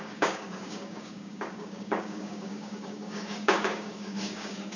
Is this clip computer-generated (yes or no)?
yes